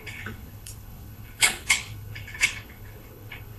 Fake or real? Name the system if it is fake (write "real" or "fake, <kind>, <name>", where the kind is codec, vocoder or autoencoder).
fake, codec, HILCodec